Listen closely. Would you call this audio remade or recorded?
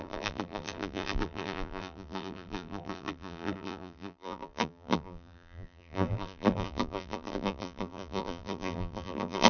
remade